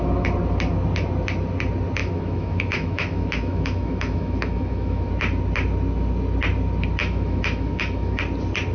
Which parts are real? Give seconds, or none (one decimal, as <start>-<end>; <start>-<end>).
0.0-2.0; 5.1-7.0; 8.2-8.7